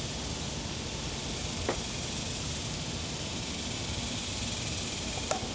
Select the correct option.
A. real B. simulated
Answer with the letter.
A